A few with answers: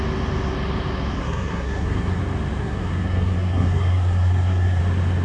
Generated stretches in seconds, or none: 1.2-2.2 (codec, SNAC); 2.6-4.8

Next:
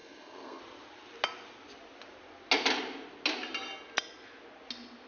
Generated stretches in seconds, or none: 0.0-0.6 (codec, SNAC)

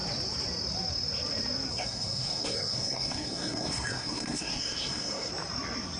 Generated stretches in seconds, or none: 1.7-5.3 (codec, SNAC)

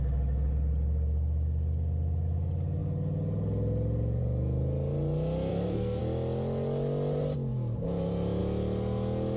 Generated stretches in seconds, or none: 5.5-6.0 (codec, SNAC)

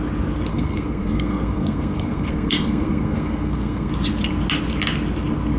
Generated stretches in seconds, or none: 0.5-3.9 (codec, SNAC)